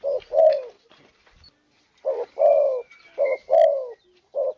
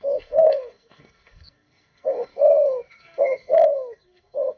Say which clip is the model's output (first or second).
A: second